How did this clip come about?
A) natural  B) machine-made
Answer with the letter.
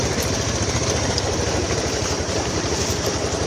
B